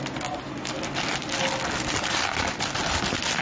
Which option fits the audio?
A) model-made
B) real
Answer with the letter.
B